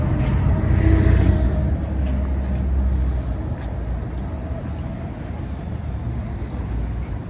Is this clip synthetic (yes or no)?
no